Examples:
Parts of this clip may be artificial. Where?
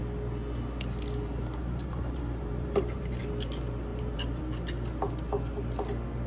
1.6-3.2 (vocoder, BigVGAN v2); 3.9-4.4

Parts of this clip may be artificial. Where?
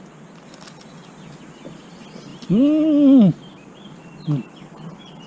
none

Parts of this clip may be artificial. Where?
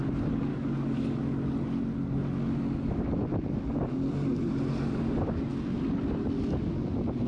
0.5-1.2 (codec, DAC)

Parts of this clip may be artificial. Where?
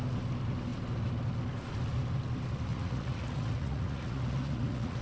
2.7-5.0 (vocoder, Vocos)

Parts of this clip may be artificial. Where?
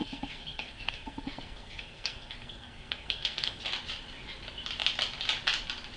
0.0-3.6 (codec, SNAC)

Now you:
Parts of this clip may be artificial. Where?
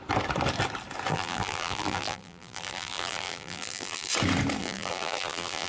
1.1-4.1 (vocoder, BigVGAN v2); 4.6-5.7